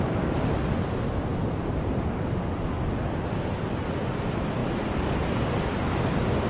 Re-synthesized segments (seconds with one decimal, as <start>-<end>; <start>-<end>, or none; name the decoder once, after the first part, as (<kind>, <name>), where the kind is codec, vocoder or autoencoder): none